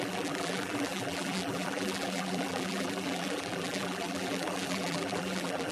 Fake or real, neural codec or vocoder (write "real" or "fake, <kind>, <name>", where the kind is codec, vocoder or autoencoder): fake, vocoder, BigVGAN v2